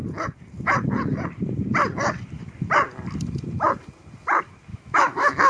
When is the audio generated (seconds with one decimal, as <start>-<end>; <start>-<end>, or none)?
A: 4.7-5.5